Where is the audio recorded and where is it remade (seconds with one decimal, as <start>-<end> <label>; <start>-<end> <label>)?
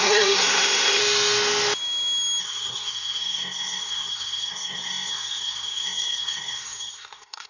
0.0-1.0 remade; 1.0-2.4 recorded; 2.4-7.5 remade